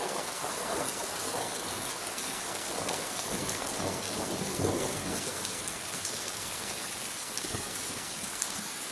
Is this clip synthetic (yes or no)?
yes